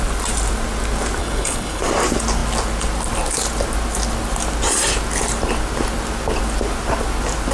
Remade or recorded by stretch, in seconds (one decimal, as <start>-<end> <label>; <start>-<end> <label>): 0.0-1.2 recorded; 1.2-1.8 remade; 1.8-7.5 recorded